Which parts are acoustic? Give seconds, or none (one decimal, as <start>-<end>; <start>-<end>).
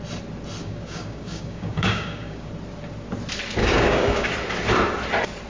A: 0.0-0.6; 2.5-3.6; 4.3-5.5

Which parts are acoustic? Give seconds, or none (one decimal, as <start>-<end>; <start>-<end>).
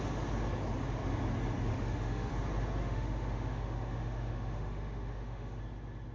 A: 0.0-1.7; 2.3-2.8; 5.6-6.1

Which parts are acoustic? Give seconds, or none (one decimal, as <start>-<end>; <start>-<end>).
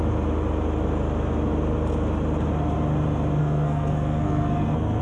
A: 0.0-3.4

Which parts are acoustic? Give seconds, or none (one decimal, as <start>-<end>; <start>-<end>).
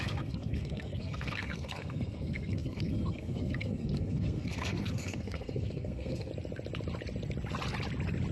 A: 6.3-8.3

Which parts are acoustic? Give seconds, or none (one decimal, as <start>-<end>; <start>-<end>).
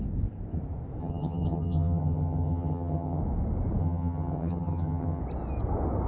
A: 0.0-1.0; 3.2-3.8; 5.2-6.1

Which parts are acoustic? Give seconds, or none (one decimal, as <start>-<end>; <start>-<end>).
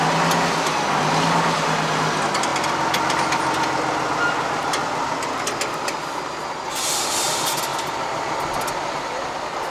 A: 0.0-9.7